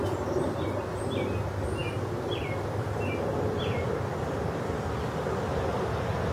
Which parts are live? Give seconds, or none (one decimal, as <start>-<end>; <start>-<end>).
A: 0.0-6.3